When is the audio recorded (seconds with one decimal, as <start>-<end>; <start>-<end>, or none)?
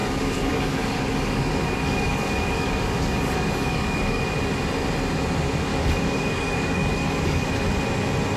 4.2-5.7; 7.5-8.4